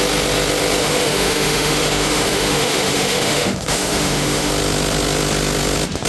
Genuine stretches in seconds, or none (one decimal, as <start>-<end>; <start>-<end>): 0.0-0.8; 4.5-6.1